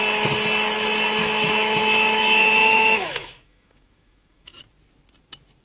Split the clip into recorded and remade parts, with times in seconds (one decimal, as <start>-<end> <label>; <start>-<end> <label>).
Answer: 0.0-1.2 recorded; 1.2-4.6 remade; 4.6-5.6 recorded